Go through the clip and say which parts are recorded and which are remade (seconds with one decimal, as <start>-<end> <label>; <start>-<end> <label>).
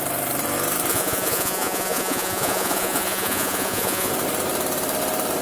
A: 0.0-0.9 recorded; 0.9-4.1 remade; 4.1-5.4 recorded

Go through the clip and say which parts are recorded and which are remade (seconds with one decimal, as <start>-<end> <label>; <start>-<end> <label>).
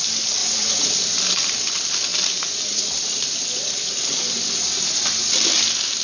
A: 0.0-0.4 recorded; 0.4-0.9 remade; 0.9-6.0 recorded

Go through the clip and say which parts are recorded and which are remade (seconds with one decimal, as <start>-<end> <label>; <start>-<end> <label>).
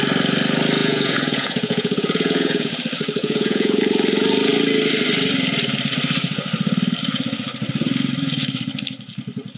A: 0.0-0.8 recorded; 0.8-2.7 remade; 2.7-3.2 recorded; 3.2-3.8 remade; 3.8-9.6 recorded